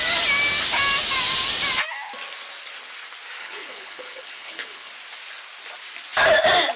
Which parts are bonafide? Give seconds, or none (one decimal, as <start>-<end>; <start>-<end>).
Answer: 0.0-3.4; 4.9-6.8